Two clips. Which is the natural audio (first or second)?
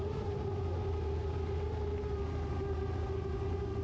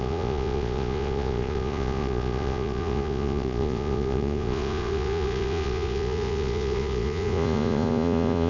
first